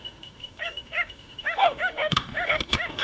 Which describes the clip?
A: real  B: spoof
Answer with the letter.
B